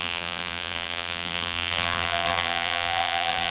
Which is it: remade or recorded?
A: remade